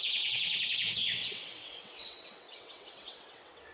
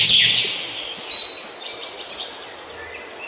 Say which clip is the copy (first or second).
first